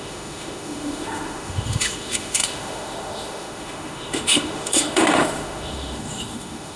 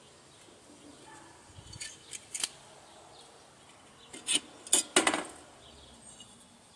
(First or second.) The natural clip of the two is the second